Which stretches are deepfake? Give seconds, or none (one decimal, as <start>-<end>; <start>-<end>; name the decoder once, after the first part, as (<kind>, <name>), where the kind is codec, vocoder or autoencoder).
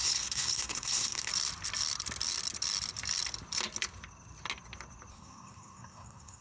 0.0-1.3 (codec, SNAC); 5.1-6.4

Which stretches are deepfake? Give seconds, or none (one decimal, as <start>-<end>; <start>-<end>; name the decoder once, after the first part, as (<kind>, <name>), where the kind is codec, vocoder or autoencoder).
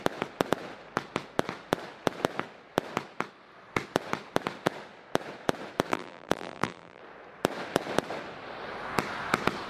5.9-7.0 (vocoder, BigVGAN v2)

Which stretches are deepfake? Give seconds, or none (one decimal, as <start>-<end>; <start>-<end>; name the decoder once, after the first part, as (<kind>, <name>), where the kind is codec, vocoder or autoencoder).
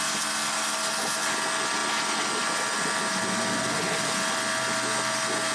none